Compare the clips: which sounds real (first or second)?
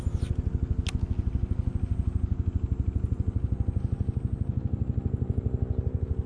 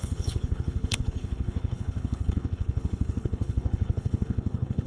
first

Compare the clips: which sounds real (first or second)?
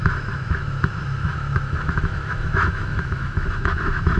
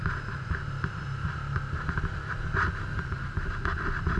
second